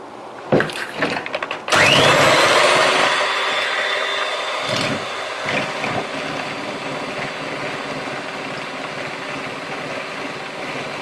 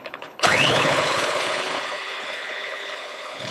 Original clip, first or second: first